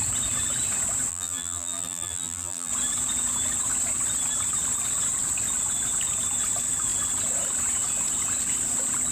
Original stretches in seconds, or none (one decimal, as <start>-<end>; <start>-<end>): 0.0-1.1; 2.7-9.1